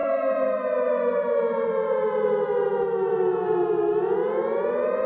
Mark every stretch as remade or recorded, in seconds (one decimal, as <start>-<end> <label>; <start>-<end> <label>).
0.0-5.1 recorded